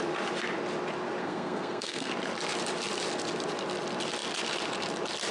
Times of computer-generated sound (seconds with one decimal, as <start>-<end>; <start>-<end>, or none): 1.2-2.1